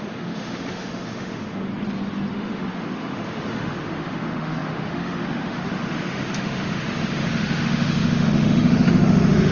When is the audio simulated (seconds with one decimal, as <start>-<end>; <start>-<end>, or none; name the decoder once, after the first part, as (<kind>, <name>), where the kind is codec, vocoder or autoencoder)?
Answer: 0.0-1.7 (autoencoder, DAC-VAE); 2.3-9.5